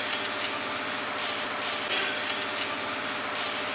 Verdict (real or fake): real